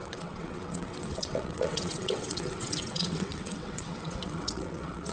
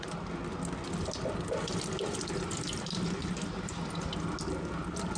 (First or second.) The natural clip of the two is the second